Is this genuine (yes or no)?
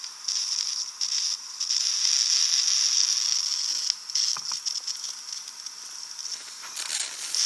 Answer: yes